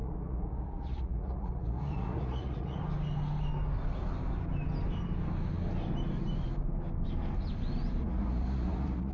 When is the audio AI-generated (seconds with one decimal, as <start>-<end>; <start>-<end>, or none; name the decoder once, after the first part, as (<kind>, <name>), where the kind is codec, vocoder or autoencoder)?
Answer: 0.0-2.8 (vocoder, Vocos); 8.0-9.1